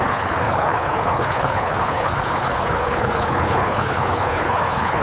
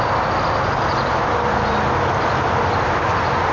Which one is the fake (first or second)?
first